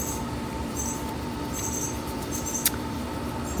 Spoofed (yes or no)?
yes